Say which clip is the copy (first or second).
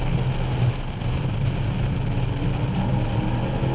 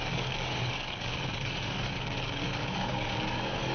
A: second